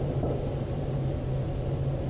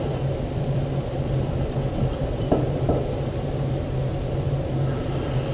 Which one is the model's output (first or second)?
second